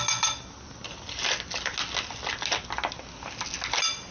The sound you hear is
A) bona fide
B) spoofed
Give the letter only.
A